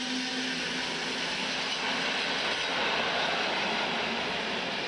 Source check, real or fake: real